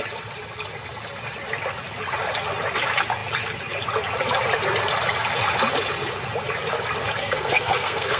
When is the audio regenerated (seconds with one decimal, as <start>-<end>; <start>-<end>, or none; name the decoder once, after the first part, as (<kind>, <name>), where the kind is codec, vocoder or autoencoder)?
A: 7.2-8.2 (codec, SNAC)